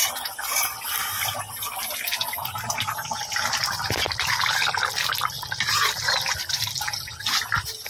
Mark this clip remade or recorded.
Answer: recorded